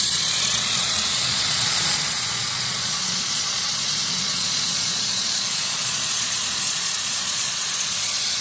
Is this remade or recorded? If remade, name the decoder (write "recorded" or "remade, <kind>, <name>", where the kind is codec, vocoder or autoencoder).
remade, vocoder, Vocos